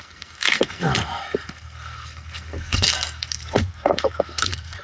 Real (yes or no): no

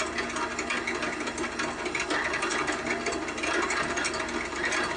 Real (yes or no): yes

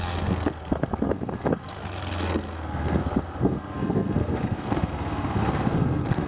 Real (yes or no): no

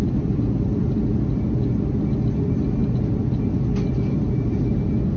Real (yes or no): yes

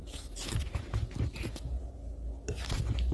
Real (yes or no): yes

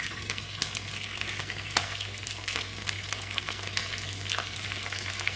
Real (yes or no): no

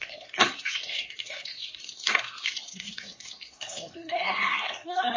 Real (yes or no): no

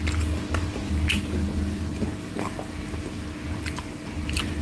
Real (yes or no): yes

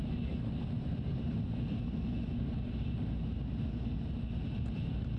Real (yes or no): yes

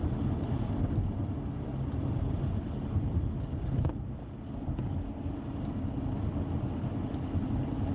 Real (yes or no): yes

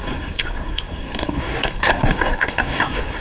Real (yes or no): no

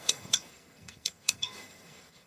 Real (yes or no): no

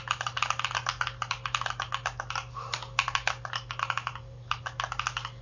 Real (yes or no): yes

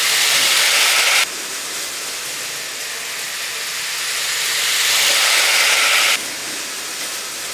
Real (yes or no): yes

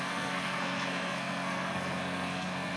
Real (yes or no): no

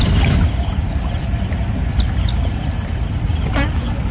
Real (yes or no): yes